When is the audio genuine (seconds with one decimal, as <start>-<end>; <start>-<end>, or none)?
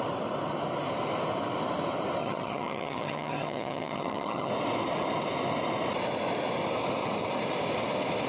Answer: 0.0-2.2; 4.5-8.3